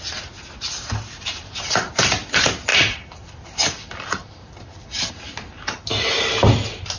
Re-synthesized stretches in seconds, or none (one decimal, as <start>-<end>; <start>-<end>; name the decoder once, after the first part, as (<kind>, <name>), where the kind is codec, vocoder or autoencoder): 2.7-5.1 (vocoder, BigVGAN v2)